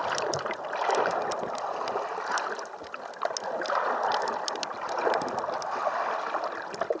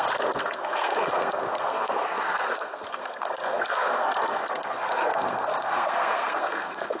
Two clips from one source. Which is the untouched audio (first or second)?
first